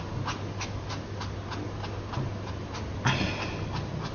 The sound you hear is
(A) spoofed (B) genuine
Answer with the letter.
B